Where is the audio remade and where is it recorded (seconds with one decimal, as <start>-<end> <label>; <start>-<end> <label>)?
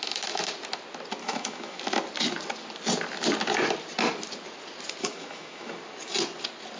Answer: 0.0-1.2 recorded; 1.2-1.8 remade; 1.8-5.0 recorded; 5.0-5.8 remade; 5.8-6.8 recorded